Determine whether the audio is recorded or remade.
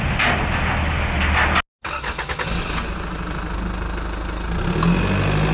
recorded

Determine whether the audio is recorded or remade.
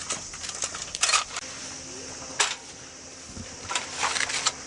recorded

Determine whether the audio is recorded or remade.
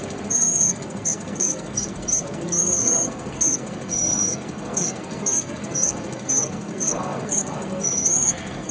remade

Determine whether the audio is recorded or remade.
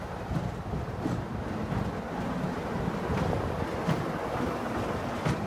recorded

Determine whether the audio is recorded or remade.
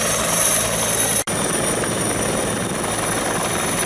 recorded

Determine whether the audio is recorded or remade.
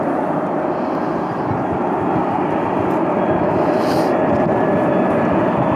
recorded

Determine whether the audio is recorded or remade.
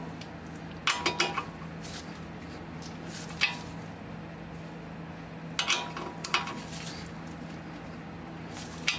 recorded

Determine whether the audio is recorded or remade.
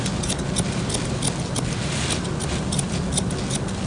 recorded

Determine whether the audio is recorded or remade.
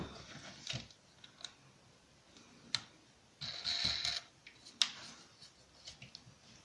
recorded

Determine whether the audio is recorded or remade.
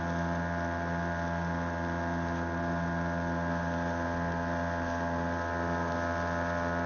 recorded